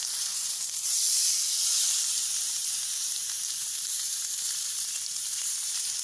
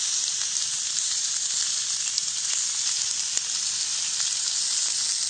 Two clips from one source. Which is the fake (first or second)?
first